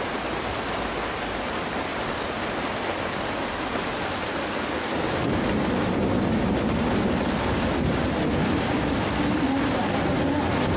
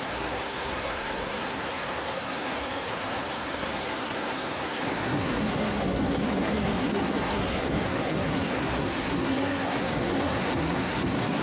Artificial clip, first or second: second